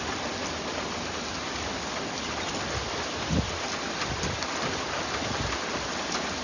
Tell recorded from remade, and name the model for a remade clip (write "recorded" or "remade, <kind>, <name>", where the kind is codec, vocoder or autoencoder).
recorded